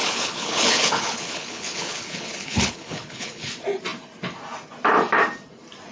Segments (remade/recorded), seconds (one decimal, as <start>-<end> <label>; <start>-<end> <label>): 0.0-3.5 remade; 3.5-5.9 recorded